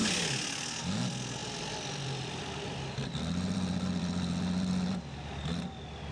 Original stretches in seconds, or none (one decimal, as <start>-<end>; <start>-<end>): 0.0-1.4; 5.1-6.1